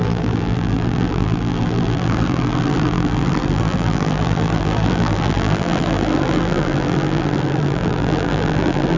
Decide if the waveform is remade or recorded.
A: remade